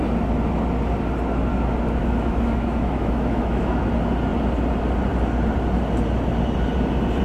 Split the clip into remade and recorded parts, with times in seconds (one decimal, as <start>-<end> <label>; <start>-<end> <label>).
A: 0.0-2.0 recorded; 2.0-3.8 remade; 3.8-7.2 recorded